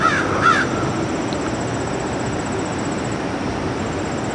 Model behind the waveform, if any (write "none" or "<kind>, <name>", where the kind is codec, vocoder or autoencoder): none